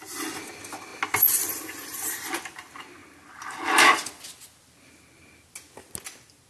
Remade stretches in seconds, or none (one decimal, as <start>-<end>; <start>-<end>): none